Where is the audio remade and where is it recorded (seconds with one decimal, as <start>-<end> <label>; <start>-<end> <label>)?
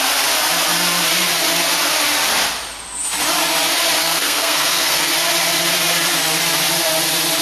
0.0-4.0 recorded; 4.0-5.1 remade; 5.1-7.4 recorded